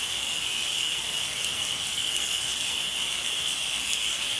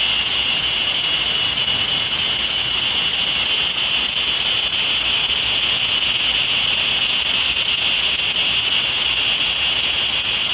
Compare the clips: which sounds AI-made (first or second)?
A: first